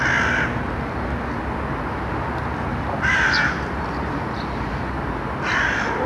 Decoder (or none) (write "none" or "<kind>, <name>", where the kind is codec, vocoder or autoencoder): none